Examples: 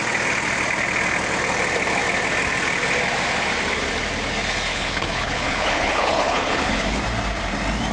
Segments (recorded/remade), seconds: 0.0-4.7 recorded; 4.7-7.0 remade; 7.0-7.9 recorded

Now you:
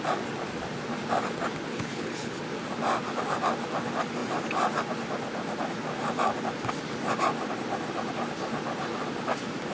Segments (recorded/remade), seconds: 0.0-1.7 recorded; 1.7-2.4 remade; 2.4-9.7 recorded